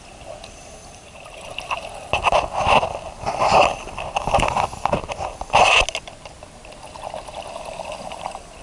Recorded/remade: recorded